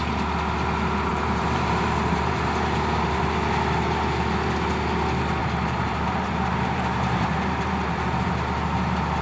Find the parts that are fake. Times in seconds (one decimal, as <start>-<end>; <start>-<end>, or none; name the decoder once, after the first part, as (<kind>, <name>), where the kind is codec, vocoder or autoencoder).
1.1-3.2 (vocoder, BigVGAN v2); 5.4-8.3